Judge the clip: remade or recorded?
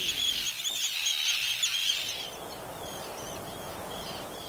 recorded